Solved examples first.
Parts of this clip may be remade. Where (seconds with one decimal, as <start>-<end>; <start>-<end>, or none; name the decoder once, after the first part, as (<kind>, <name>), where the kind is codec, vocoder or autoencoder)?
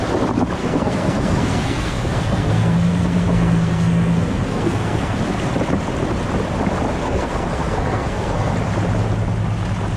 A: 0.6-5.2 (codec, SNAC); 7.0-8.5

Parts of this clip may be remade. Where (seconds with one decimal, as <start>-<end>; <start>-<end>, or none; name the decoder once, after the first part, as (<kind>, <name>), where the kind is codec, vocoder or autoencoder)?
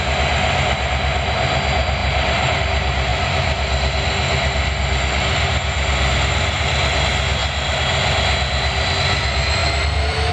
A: 2.0-2.6 (vocoder, BigVGAN v2); 9.6-10.3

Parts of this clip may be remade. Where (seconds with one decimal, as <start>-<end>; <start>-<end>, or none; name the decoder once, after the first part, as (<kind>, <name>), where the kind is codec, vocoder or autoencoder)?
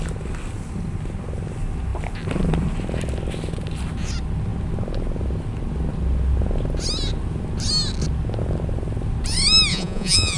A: 9.7-10.4 (vocoder, Vocos)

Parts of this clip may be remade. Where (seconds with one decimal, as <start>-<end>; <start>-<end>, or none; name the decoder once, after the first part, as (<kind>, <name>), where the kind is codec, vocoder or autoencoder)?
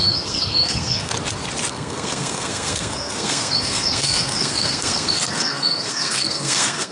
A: 0.0-1.1 (codec, SNAC); 1.7-6.9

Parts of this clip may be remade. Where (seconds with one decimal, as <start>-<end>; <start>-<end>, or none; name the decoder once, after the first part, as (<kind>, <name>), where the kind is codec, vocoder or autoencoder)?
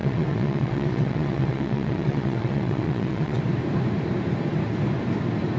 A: 0.0-3.4 (vocoder, WaveNeXt)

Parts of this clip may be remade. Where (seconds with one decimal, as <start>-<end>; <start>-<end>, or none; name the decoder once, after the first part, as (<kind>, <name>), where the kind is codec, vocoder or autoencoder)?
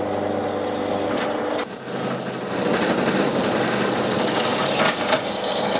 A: none